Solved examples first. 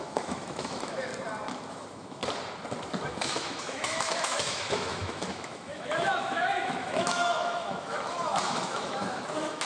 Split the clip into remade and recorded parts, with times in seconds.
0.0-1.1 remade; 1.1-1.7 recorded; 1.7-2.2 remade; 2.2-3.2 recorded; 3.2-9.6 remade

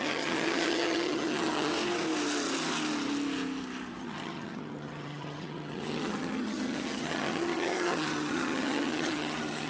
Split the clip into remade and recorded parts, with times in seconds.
0.0-1.7 remade; 1.7-4.0 recorded; 4.0-9.7 remade

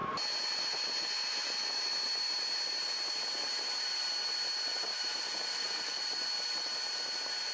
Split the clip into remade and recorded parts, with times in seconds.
0.0-4.9 recorded; 4.9-5.9 remade; 5.9-7.5 recorded

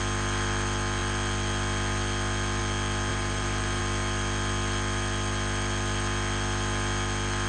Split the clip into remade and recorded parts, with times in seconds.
0.0-3.1 recorded; 3.1-3.8 remade; 3.8-7.5 recorded

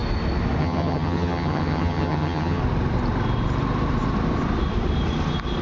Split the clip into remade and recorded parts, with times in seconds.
0.0-0.6 recorded; 0.6-2.6 remade; 2.6-5.6 recorded

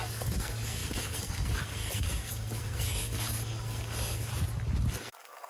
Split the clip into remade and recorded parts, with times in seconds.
0.0-4.3 remade; 4.3-4.9 recorded; 4.9-5.5 remade

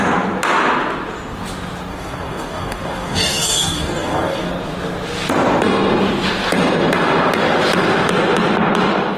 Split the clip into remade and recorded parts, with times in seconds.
0.0-1.9 recorded; 1.9-4.5 remade; 4.5-9.2 recorded

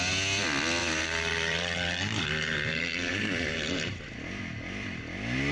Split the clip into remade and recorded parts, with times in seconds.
0.0-0.8 recorded; 0.8-4.0 remade; 4.0-5.5 recorded